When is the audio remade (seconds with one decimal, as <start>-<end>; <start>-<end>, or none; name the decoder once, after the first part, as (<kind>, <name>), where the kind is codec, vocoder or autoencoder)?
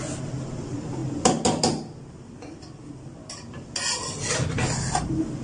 none